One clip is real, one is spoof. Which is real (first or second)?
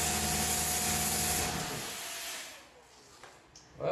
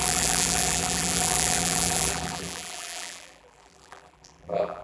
first